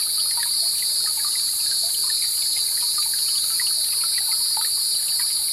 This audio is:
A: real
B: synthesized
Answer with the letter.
A